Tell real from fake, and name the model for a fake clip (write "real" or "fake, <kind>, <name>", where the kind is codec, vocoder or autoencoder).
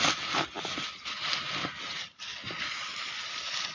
real